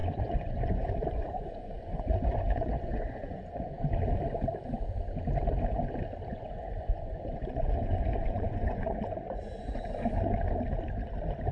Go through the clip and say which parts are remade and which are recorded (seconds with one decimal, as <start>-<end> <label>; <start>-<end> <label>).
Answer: 0.0-3.9 remade; 3.9-6.3 recorded; 6.3-10.1 remade; 10.1-11.5 recorded